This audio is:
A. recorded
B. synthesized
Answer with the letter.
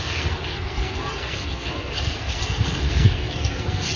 B